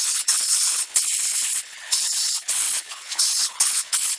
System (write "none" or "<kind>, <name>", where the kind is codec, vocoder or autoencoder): codec, HILCodec